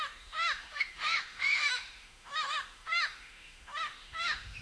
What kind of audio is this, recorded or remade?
remade